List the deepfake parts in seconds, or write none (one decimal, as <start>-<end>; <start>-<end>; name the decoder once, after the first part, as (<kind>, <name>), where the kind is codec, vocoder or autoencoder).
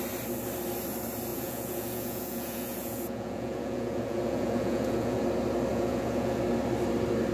1.3-5.2 (vocoder, Vocos); 5.7-6.4